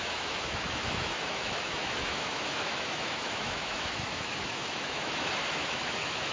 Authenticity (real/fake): fake